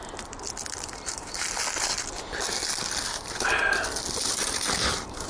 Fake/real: real